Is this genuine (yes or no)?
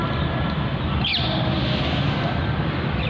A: no